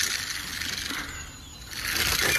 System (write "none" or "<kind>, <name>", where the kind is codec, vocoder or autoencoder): none